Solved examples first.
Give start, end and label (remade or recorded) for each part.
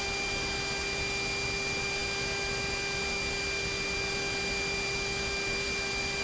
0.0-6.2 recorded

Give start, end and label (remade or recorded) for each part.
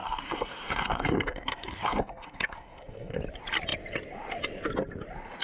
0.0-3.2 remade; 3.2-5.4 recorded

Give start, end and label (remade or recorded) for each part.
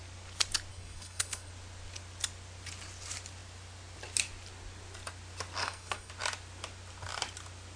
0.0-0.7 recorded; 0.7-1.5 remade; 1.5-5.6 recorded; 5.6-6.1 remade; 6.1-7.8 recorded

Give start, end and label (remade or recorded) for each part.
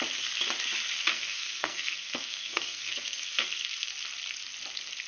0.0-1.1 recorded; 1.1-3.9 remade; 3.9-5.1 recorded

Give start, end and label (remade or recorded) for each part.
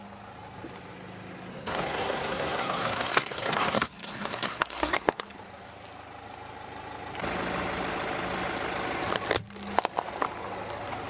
0.0-1.5 recorded; 1.5-5.2 remade; 5.2-11.1 recorded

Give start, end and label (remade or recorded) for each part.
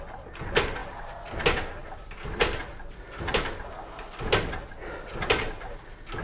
0.0-6.2 recorded